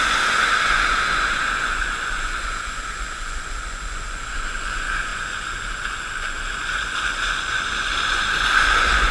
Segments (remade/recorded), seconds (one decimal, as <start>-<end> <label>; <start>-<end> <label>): 0.0-9.1 remade